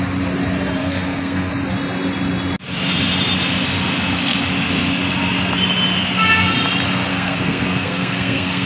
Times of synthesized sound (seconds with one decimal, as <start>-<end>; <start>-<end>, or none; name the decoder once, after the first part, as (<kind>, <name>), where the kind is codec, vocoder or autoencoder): 0.8-1.5 (codec, SNAC); 7.1-8.7